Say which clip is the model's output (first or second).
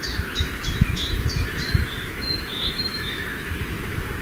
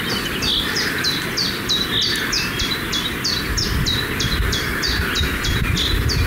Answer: first